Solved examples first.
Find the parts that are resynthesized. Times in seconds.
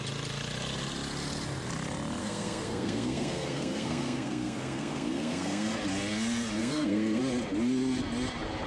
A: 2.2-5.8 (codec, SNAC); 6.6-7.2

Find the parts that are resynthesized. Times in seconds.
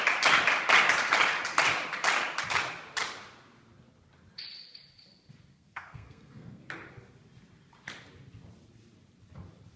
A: 5.5-6.6 (codec, SNAC)